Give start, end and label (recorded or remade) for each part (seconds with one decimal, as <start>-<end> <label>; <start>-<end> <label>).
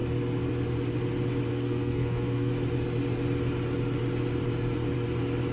0.0-1.5 recorded; 1.5-2.5 remade; 2.5-5.5 recorded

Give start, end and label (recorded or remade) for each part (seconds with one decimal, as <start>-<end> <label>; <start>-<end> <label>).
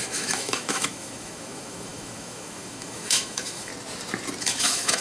0.0-3.7 remade; 3.7-4.4 recorded; 4.4-5.0 remade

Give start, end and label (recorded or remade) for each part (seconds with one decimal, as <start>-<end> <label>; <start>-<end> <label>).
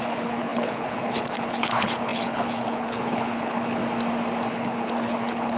0.0-3.8 remade; 3.8-4.5 recorded; 4.5-5.6 remade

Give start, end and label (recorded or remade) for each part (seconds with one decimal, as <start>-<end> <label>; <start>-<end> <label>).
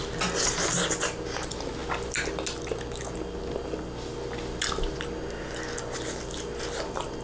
0.0-7.2 recorded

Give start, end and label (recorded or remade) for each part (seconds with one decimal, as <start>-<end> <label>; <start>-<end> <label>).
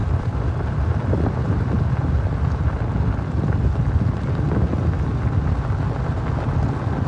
0.0-1.6 remade; 1.6-7.1 recorded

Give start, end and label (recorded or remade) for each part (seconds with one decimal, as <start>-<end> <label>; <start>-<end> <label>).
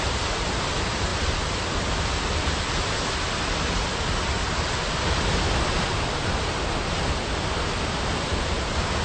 0.0-9.0 recorded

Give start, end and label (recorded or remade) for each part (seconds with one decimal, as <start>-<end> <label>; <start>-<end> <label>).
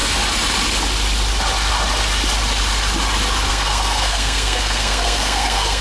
0.0-3.5 recorded; 3.5-5.8 remade